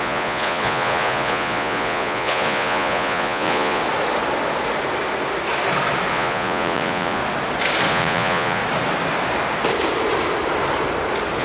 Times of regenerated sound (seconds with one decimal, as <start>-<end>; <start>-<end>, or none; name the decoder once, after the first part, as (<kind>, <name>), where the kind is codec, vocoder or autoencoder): 0.0-3.8 (vocoder, Vocos); 6.1-7.2; 7.9-8.6